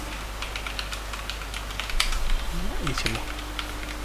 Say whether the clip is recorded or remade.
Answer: recorded